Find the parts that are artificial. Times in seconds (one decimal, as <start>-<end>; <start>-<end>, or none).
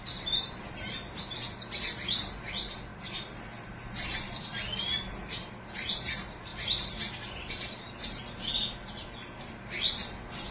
2.9-3.4; 4.1-4.8; 9.0-9.9